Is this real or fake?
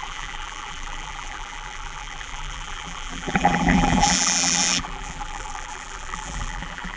fake